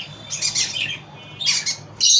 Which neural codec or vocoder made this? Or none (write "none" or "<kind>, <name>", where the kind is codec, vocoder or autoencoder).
none